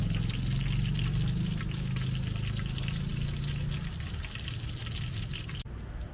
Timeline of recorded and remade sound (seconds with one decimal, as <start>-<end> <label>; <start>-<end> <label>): 0.0-6.1 recorded